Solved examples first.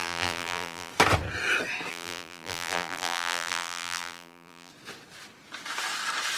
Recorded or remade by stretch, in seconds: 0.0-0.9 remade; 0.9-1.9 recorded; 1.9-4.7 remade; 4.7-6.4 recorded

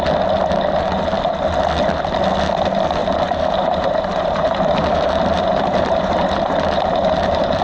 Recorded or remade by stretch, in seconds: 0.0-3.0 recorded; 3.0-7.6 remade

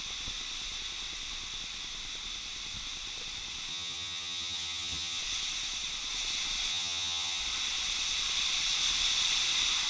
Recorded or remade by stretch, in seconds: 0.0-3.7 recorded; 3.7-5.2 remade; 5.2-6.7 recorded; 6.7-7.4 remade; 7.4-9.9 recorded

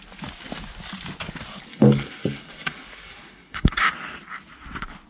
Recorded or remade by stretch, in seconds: 0.0-1.7 recorded; 1.7-3.9 remade; 3.9-5.1 recorded

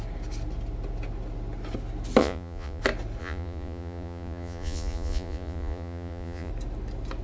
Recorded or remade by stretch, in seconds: 0.0-2.2 recorded; 2.2-2.8 remade; 2.8-3.2 recorded; 3.2-6.5 remade; 6.5-7.2 recorded

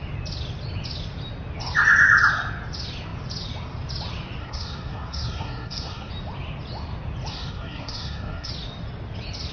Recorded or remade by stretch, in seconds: 0.0-4.4 recorded; 4.4-6.1 remade; 6.1-7.3 recorded; 7.3-8.5 remade; 8.5-9.5 recorded